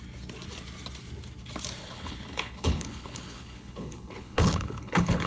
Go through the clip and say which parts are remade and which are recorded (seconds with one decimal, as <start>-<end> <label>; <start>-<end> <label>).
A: 0.0-1.8 recorded; 1.8-5.3 remade